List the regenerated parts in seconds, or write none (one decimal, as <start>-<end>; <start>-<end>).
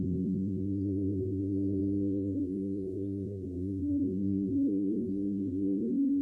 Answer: 0.0-6.2